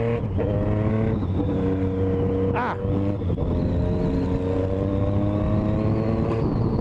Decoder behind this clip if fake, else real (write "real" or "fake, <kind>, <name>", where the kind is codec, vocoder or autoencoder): real